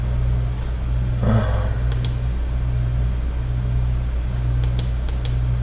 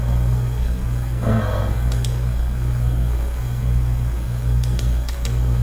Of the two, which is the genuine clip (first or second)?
first